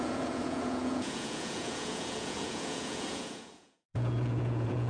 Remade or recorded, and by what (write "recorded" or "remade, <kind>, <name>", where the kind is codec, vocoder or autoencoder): remade, vocoder, Vocos